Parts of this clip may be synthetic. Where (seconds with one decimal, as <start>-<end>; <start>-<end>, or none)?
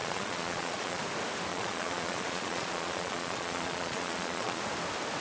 0.0-1.0; 1.5-4.6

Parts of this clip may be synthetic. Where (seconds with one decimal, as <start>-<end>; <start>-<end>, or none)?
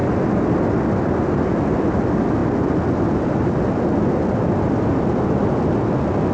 none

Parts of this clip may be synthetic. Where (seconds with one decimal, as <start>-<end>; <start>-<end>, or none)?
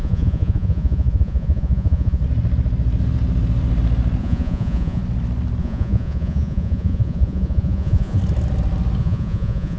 0.0-2.2; 4.2-5.0; 5.6-8.2; 9.0-9.8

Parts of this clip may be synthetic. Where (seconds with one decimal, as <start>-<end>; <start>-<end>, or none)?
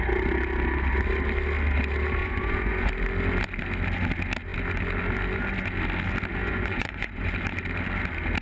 2.2-2.9; 6.4-7.3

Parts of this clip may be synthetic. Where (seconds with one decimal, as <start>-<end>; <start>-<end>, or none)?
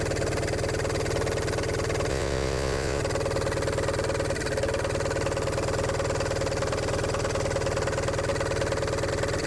2.1-3.0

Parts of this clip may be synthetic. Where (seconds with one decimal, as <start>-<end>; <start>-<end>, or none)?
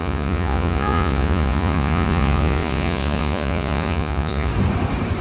0.0-4.5